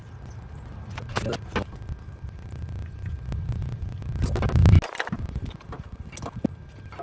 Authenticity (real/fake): real